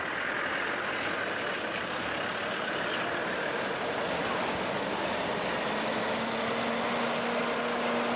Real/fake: real